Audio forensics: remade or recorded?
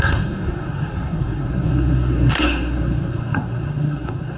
remade